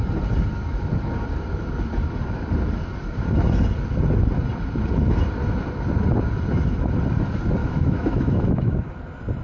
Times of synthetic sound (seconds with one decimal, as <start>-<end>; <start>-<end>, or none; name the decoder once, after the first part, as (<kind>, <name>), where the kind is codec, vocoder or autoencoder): 7.6-8.9 (autoencoder, DAC-VAE)